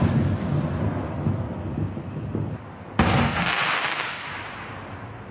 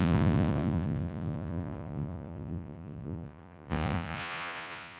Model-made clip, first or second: second